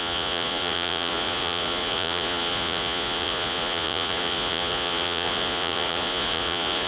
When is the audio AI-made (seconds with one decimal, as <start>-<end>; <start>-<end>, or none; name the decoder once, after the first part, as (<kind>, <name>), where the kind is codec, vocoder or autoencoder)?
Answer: 0.0-6.9 (vocoder, Vocos)